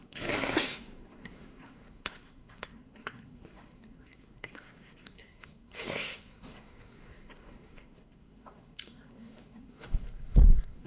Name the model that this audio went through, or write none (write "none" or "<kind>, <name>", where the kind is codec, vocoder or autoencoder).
codec, SNAC